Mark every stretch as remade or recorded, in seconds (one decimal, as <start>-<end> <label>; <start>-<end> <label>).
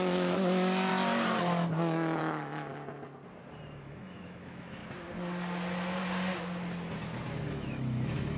0.0-0.9 remade; 0.9-2.2 recorded; 2.2-2.7 remade; 2.7-3.8 recorded; 3.8-4.8 remade; 4.8-7.5 recorded; 7.5-8.4 remade